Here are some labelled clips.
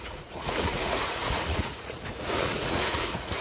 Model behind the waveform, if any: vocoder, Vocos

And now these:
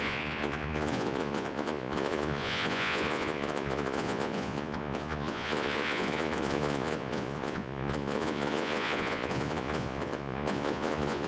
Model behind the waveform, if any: vocoder, Vocos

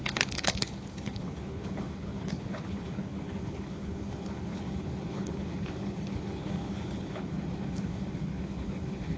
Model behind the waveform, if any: codec, HILCodec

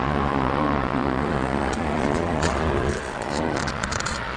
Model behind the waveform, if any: vocoder, Vocos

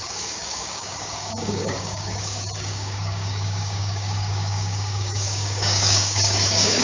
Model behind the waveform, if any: codec, DAC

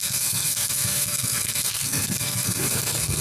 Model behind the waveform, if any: codec, SNAC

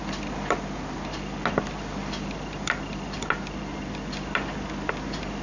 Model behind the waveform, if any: none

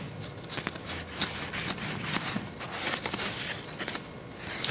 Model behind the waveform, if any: none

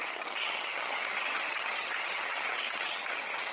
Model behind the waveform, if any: vocoder, HiFi-GAN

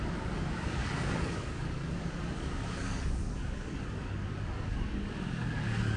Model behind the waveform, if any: codec, DAC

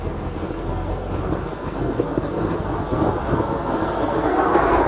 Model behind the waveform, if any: codec, SNAC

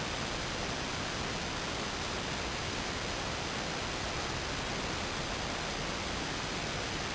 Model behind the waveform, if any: none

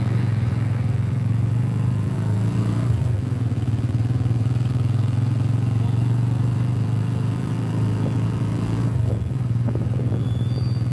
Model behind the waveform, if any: vocoder, BigVGAN v2